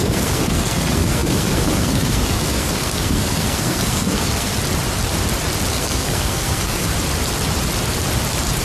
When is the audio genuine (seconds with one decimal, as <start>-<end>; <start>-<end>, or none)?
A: 4.5-5.7; 6.9-8.6